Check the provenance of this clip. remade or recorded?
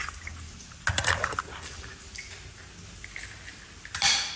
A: recorded